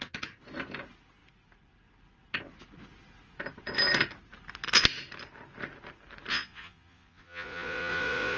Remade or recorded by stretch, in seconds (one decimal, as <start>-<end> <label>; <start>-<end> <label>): 0.0-6.3 recorded; 6.3-8.4 remade